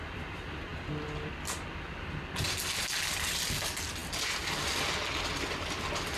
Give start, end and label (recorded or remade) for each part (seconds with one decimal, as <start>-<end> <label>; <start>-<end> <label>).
0.0-4.0 recorded; 4.0-5.8 remade; 5.8-6.2 recorded